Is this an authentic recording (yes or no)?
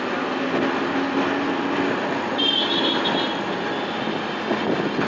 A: yes